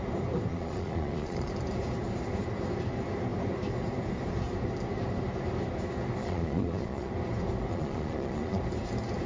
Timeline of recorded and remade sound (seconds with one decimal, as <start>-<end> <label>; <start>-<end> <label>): 0.0-0.5 recorded; 0.5-1.5 remade; 1.5-6.2 recorded; 6.2-7.1 remade; 7.1-7.7 recorded; 7.7-8.6 remade; 8.6-9.3 recorded